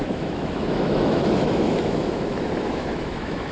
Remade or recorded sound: remade